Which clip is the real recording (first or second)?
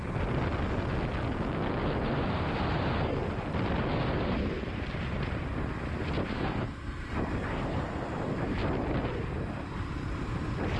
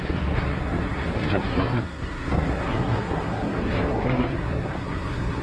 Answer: first